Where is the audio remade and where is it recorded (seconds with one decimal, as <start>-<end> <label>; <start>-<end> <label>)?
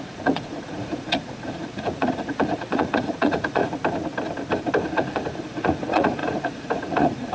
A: 0.0-3.6 remade; 3.6-4.8 recorded; 4.8-7.3 remade